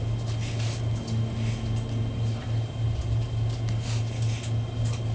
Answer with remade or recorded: recorded